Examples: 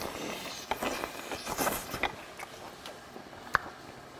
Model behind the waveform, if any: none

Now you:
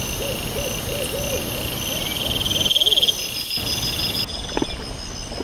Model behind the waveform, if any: none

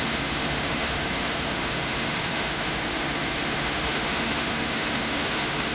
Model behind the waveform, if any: autoencoder, DAC-VAE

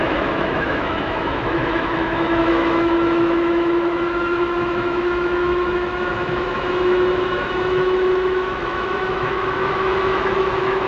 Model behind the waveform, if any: autoencoder, DAC-VAE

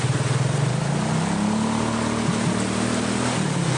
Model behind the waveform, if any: none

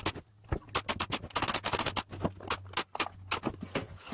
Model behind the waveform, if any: none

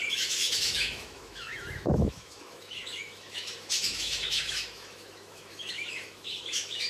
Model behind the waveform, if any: autoencoder, DAC-VAE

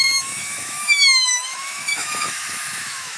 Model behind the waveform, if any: autoencoder, DAC-VAE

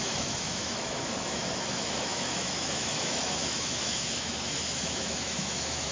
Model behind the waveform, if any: autoencoder, DAC-VAE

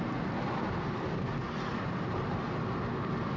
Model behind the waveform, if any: none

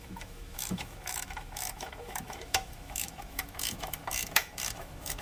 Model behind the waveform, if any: autoencoder, DAC-VAE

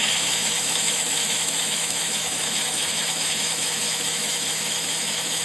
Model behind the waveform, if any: autoencoder, DAC-VAE